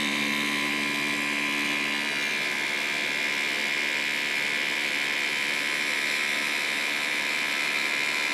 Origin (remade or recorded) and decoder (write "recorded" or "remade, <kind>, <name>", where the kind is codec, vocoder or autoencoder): remade, vocoder, BigVGAN v2